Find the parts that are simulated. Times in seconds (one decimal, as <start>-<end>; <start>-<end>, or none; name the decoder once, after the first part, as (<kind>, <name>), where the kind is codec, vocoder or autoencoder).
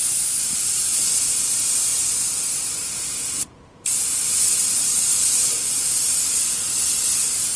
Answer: 0.0-0.7 (vocoder, BigVGAN v2); 4.6-5.5